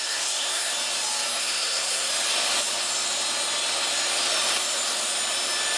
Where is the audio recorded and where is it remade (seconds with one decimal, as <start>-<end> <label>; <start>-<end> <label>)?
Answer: 0.0-0.7 remade; 0.7-1.4 recorded; 1.4-2.1 remade; 2.1-5.8 recorded